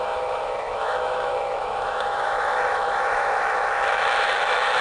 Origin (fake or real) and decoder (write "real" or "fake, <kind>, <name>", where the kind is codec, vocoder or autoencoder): fake, autoencoder, DAC-VAE